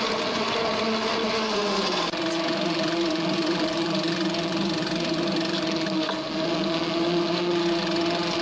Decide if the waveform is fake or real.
real